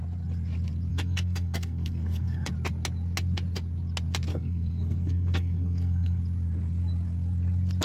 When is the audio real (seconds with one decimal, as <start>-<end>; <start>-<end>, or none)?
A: 0.0-0.9; 2.5-4.3; 6.2-7.8